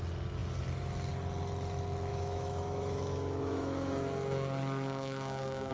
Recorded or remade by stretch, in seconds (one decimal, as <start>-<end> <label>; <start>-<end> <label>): 0.0-2.1 recorded; 2.1-5.7 remade